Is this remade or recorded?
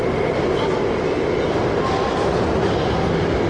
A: recorded